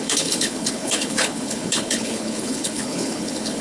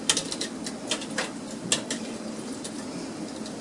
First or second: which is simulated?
first